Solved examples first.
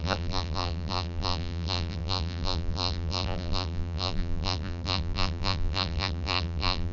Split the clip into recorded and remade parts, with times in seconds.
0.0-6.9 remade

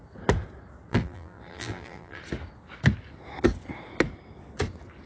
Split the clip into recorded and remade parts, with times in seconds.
0.0-0.9 recorded; 0.9-2.2 remade; 2.2-5.1 recorded

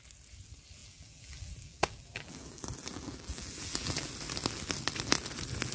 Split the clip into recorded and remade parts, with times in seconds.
0.0-0.8 recorded; 0.8-4.1 remade; 4.1-5.7 recorded

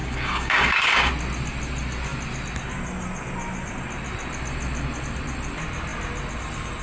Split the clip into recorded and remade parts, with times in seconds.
0.0-1.1 remade; 1.1-6.8 recorded